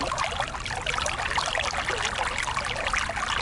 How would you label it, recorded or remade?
recorded